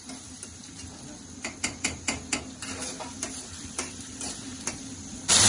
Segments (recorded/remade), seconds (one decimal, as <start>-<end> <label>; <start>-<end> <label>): 0.0-5.5 remade